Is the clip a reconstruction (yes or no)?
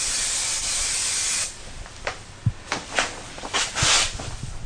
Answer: yes